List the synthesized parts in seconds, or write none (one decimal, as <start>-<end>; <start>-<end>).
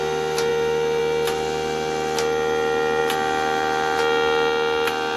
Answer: none